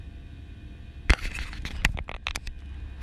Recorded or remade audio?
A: recorded